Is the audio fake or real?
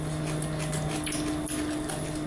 real